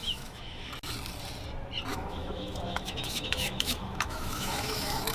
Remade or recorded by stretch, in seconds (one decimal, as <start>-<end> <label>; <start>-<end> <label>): 0.0-0.7 remade; 0.7-1.9 recorded; 1.9-5.1 remade